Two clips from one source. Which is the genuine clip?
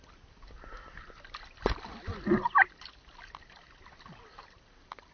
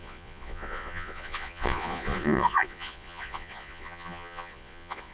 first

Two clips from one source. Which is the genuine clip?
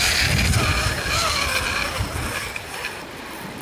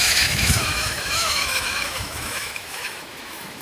first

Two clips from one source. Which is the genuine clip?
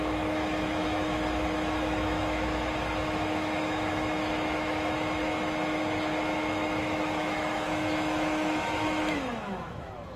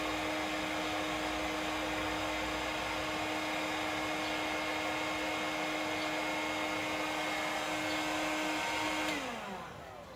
second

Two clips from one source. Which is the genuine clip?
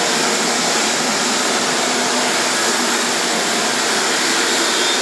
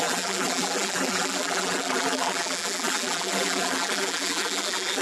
first